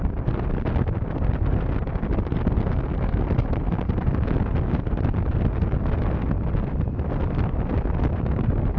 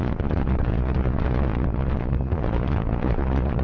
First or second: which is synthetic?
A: second